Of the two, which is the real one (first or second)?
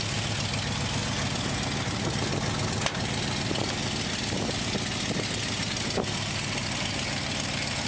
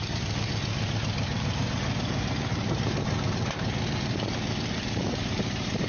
first